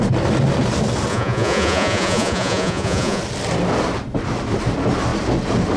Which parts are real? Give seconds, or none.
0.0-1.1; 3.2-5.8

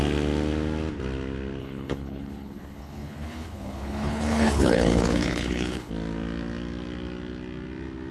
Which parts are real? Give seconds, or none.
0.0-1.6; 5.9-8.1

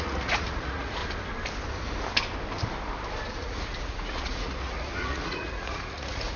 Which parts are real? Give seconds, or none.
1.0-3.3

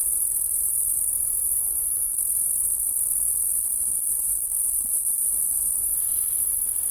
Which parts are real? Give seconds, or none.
0.0-1.6; 2.2-3.6; 5.4-6.9